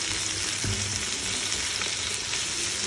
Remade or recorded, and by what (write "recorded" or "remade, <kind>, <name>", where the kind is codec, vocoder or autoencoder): recorded